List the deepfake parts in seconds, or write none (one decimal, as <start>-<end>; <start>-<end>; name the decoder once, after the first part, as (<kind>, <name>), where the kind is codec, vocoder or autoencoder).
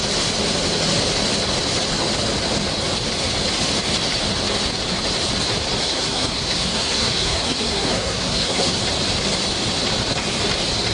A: 5.8-8.8 (codec, SNAC)